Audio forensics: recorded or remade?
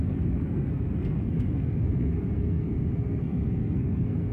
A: remade